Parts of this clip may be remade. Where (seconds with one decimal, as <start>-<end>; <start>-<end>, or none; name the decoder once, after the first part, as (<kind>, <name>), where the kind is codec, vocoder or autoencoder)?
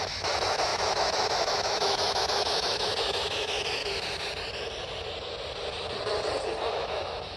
0.0-3.8 (autoencoder, DAC-VAE); 6.7-7.4